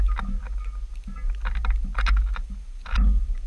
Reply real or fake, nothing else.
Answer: real